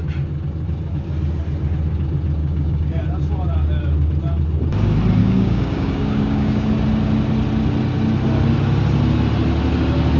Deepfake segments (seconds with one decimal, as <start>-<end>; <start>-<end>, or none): 2.4-3.0; 5.2-6.7